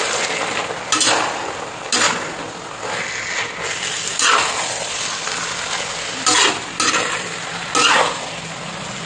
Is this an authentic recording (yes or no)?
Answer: yes